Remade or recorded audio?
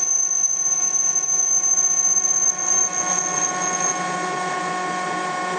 recorded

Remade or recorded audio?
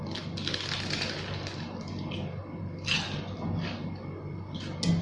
recorded